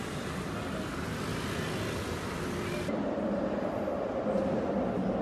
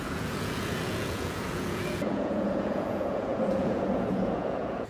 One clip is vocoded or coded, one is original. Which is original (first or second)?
first